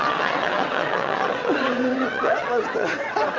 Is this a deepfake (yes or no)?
yes